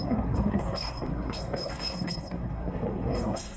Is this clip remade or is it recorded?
remade